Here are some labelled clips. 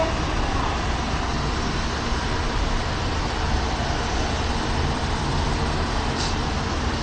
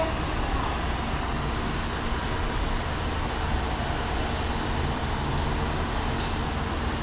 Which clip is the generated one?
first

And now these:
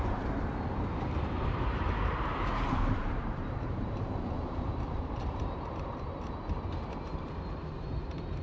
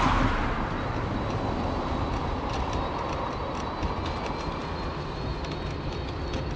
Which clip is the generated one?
first